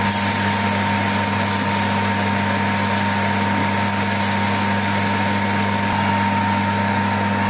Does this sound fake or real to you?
real